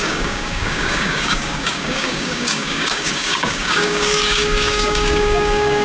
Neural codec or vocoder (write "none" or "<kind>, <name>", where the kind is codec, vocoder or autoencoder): codec, DAC